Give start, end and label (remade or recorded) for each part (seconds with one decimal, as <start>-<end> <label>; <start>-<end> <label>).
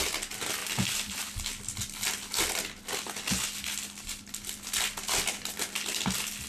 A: 0.0-6.5 recorded